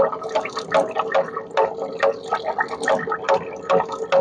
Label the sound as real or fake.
real